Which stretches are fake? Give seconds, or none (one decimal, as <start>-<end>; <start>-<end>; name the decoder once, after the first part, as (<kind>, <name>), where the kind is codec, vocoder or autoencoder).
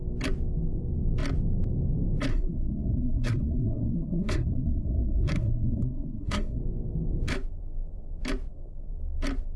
2.3-6.6 (codec, SNAC)